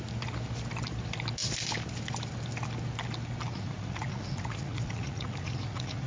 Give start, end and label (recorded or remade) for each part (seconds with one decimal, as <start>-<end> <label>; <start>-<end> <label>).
0.0-3.5 recorded; 3.5-6.1 remade